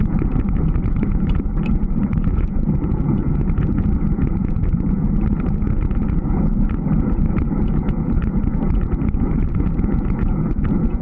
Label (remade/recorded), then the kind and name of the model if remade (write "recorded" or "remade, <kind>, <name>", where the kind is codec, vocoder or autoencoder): remade, vocoder, Vocos